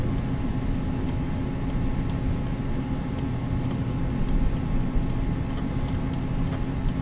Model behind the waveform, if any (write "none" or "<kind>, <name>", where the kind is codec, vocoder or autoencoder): none